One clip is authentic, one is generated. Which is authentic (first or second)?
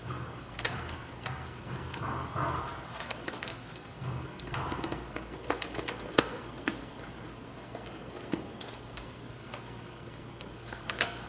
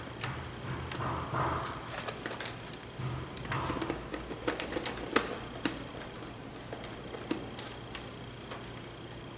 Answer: second